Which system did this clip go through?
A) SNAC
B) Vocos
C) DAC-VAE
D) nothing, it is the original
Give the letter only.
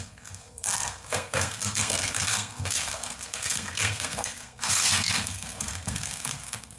A